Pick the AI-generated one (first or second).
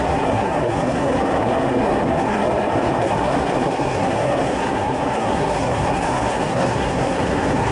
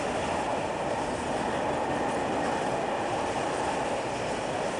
first